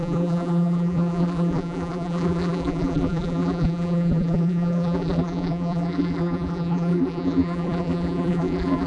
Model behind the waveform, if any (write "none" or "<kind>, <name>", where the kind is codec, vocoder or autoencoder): vocoder, BigVGAN v2